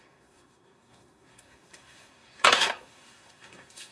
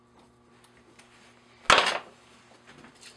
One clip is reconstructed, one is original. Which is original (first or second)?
second